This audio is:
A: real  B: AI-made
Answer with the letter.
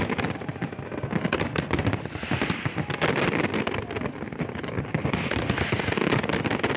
A